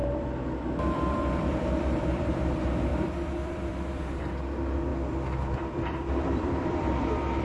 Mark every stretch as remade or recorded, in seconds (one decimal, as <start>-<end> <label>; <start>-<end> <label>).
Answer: 0.0-2.3 remade; 2.3-2.9 recorded; 2.9-4.0 remade; 4.0-4.9 recorded; 4.9-7.4 remade